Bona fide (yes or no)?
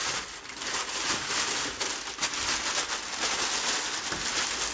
yes